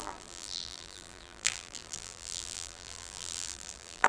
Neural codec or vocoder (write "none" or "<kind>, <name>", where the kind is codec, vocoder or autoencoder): vocoder, BigVGAN v2